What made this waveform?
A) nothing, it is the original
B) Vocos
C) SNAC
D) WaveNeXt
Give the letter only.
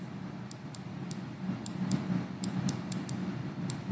A